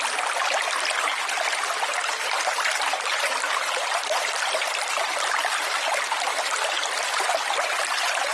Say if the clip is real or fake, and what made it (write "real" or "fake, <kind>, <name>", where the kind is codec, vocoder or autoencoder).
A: real